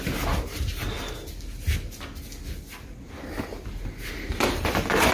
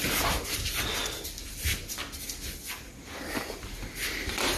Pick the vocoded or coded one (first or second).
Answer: second